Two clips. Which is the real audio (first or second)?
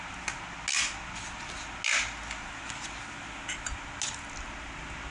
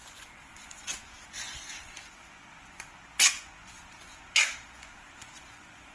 first